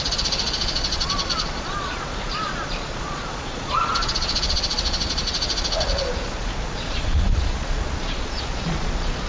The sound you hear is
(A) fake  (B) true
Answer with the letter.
A